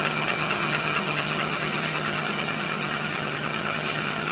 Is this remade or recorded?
remade